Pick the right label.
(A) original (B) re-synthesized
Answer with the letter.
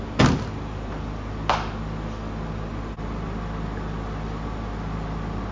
A